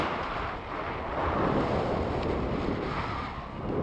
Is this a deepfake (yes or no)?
no